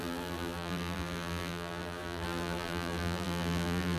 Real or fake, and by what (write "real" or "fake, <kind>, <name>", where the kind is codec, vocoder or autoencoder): fake, vocoder, BigVGAN v2